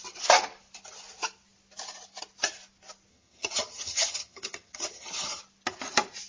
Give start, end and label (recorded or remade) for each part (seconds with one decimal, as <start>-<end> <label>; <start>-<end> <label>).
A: 0.0-3.1 recorded; 3.1-5.4 remade; 5.4-6.3 recorded